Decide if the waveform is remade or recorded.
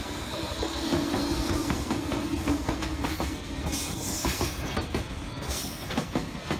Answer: remade